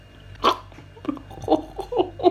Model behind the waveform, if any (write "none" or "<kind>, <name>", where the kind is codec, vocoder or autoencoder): none